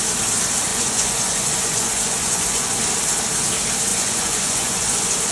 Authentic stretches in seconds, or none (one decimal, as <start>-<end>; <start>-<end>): 0.0-0.7; 2.8-3.9